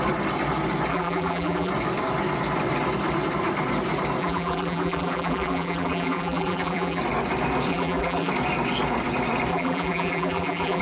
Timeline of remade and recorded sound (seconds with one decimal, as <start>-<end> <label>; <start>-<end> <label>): 0.0-0.9 recorded; 0.9-1.7 remade; 1.7-4.2 recorded; 4.2-7.0 remade; 7.0-7.7 recorded; 7.7-8.3 remade; 8.3-9.5 recorded; 9.5-10.8 remade